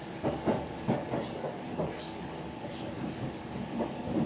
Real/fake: fake